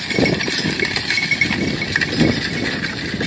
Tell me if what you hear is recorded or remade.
recorded